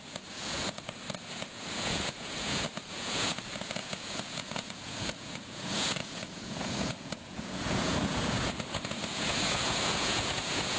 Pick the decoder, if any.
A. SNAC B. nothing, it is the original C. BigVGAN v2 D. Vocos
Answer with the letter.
D